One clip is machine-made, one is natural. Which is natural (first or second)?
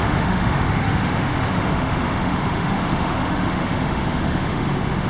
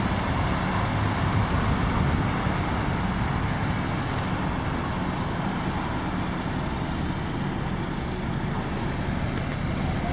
second